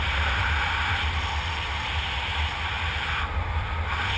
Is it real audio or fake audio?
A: fake